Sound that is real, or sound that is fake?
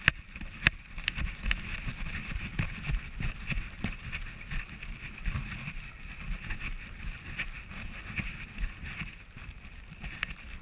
real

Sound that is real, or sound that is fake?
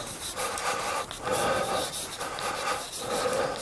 real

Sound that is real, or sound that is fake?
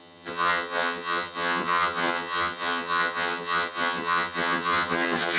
fake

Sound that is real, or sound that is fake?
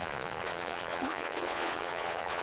fake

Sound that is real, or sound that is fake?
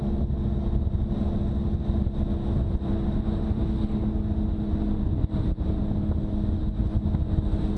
real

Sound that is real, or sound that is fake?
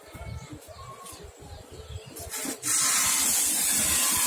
real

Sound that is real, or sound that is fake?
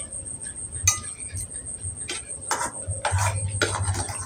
real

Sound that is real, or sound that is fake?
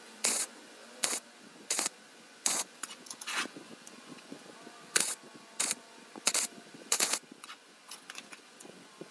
fake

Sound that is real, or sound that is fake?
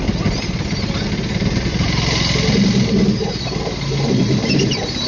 real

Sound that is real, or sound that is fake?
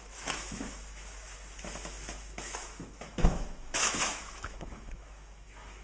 fake